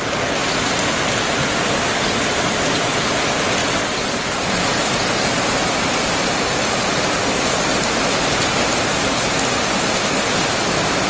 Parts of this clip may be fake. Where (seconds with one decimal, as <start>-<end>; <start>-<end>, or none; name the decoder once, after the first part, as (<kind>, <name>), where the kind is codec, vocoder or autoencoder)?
none